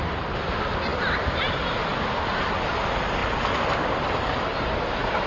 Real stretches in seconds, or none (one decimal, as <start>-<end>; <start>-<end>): 0.0-5.3

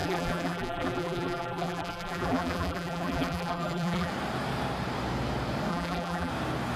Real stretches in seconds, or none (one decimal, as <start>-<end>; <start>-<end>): 4.1-5.7; 6.3-6.8

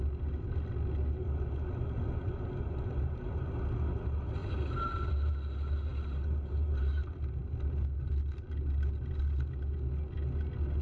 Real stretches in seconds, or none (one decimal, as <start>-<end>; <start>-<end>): 0.0-10.8

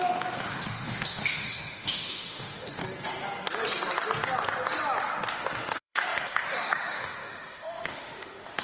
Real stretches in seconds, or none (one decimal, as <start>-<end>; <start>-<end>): 2.8-5.3

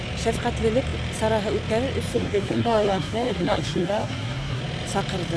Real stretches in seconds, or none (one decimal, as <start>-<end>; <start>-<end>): 0.0-2.1; 4.6-5.4